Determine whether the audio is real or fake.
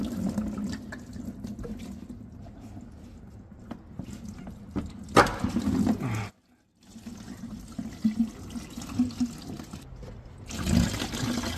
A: real